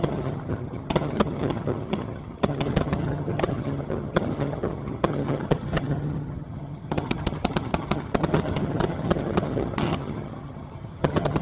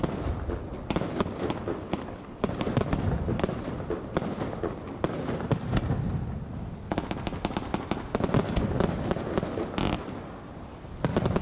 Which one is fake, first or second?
first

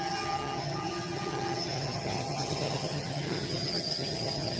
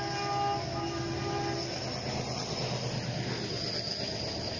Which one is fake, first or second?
first